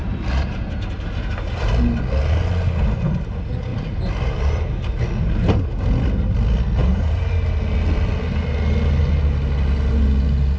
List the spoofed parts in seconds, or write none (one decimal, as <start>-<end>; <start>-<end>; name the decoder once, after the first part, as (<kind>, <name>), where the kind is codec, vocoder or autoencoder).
0.0-1.7 (vocoder, BigVGAN v2); 3.7-5.0; 6.8-7.3